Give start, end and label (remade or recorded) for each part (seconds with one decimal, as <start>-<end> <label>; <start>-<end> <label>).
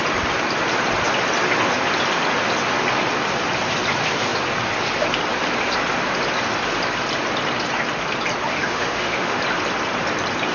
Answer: 0.0-8.5 recorded; 8.5-9.4 remade; 9.4-10.5 recorded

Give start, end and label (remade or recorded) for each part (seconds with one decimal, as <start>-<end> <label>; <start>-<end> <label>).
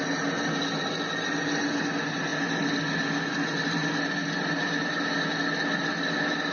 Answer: 0.0-6.5 recorded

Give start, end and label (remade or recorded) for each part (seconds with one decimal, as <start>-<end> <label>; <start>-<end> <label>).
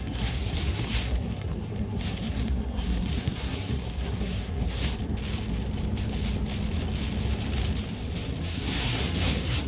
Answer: 0.0-5.0 remade; 5.0-8.4 recorded; 8.4-9.7 remade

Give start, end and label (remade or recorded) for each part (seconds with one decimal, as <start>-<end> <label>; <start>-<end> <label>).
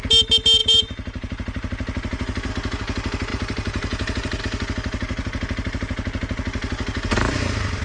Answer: 0.0-0.6 recorded; 0.6-2.5 remade; 2.5-3.3 recorded; 3.3-4.4 remade; 4.4-7.8 recorded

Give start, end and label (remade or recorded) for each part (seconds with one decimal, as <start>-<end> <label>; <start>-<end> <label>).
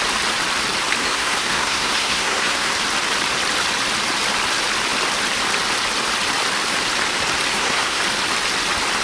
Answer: 0.0-1.0 recorded; 1.0-2.7 remade; 2.7-7.5 recorded; 7.5-8.0 remade; 8.0-9.0 recorded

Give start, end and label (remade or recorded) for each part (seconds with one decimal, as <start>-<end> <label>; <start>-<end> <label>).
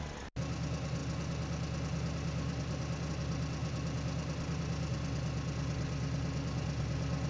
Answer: 0.0-7.3 recorded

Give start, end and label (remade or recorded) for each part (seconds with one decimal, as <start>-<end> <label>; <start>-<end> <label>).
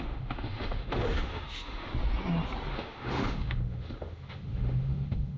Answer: 0.0-1.9 remade; 1.9-2.7 recorded; 2.7-5.4 remade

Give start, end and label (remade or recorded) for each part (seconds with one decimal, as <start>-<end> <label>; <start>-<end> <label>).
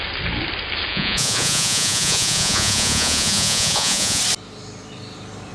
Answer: 0.0-0.9 recorded; 0.9-4.2 remade; 4.2-5.5 recorded